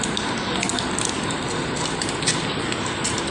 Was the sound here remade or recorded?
recorded